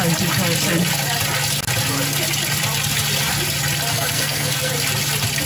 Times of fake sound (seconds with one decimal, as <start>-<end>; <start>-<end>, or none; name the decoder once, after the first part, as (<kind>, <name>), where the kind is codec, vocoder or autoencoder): 3.9-4.7 (codec, SNAC)